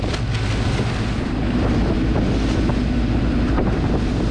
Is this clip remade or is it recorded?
recorded